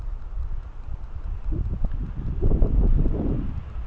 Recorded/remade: recorded